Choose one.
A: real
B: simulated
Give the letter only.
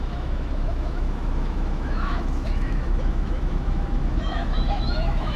B